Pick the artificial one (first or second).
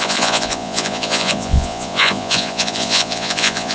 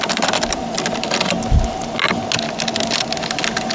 first